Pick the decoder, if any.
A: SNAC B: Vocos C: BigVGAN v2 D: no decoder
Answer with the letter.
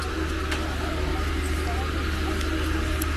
D